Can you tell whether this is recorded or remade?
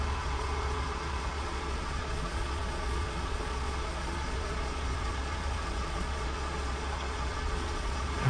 remade